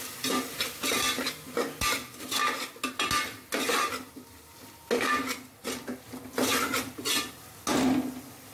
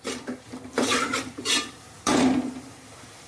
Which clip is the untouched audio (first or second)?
first